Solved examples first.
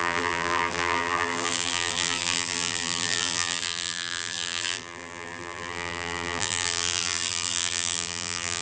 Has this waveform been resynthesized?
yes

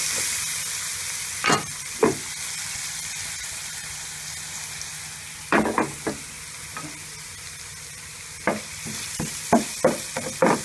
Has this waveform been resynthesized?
no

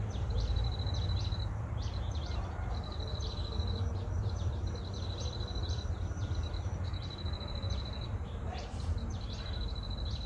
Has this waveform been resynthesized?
yes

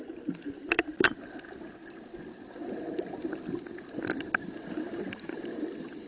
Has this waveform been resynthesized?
yes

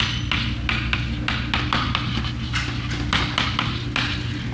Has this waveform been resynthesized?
no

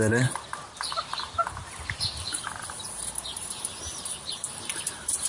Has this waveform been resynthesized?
yes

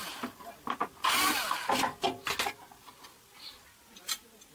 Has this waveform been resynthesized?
no